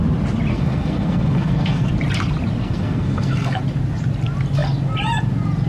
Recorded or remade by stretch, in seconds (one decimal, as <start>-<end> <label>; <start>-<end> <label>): 0.0-0.5 recorded; 0.5-1.9 remade; 1.9-2.6 recorded; 2.6-3.6 remade; 3.6-5.7 recorded